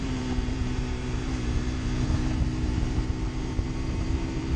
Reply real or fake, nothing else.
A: fake